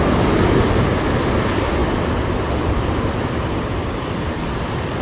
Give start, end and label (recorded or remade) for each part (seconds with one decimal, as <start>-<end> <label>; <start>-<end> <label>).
0.0-5.0 recorded